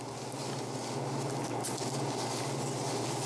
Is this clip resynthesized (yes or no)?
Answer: no